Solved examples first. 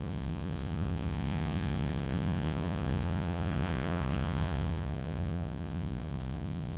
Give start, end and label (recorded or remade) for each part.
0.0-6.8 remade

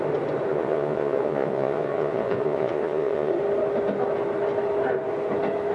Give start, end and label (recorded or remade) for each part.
0.0-0.5 recorded; 0.5-3.3 remade; 3.3-5.7 recorded

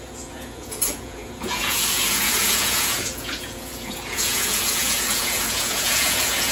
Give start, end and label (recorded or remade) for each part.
0.0-6.5 remade

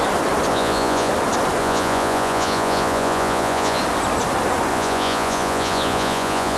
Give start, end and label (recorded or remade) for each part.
0.0-0.5 recorded; 0.5-1.1 remade; 1.1-1.6 recorded; 1.6-3.8 remade; 3.8-4.7 recorded; 4.7-6.6 remade

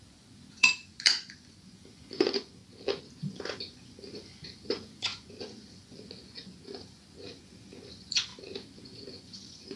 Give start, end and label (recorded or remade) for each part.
0.0-2.6 remade; 2.6-3.2 recorded; 3.2-8.3 remade; 8.3-8.8 recorded; 8.8-9.8 remade